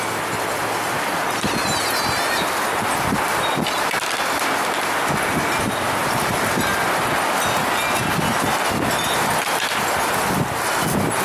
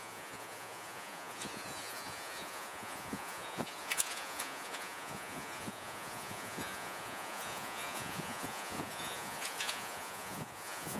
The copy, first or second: second